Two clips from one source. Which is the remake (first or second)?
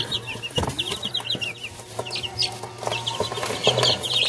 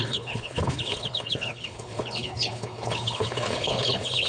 second